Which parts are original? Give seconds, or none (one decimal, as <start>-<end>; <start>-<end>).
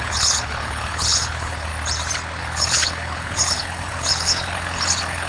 1.7-2.4